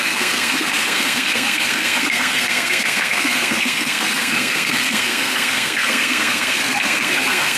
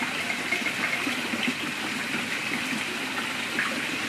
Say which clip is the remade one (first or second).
first